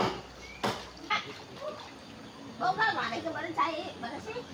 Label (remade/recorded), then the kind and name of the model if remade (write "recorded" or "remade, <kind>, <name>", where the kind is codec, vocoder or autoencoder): recorded